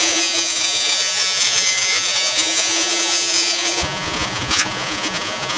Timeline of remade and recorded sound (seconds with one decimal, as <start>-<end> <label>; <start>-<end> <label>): 0.0-5.6 remade